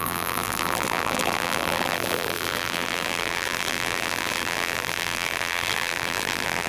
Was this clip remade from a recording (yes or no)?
yes